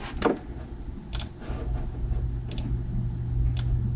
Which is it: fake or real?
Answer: real